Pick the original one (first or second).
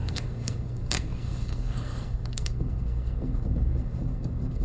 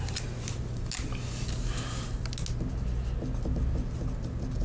second